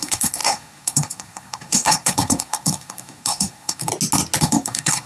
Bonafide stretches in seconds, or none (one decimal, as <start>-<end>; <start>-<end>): 3.9-4.4